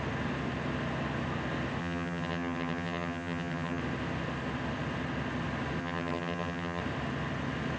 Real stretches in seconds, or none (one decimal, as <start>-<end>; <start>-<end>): 0.0-1.8; 3.8-5.8; 6.8-7.8

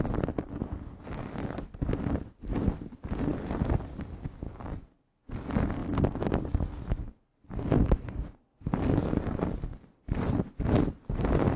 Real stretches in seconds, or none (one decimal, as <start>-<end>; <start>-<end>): 0.0-11.6

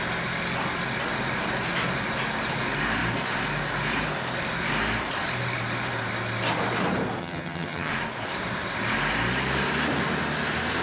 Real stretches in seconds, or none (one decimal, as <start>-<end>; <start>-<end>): 0.0-7.2; 7.9-10.8

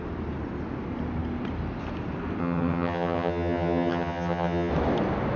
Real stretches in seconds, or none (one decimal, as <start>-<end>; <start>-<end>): 0.0-2.4; 4.7-5.4

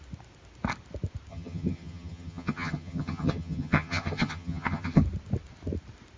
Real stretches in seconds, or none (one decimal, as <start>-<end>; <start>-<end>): 0.0-1.3; 5.0-6.2